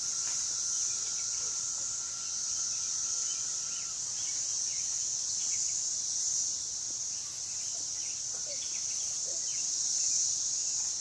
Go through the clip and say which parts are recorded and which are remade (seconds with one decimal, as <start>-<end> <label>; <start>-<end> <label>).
0.0-11.0 recorded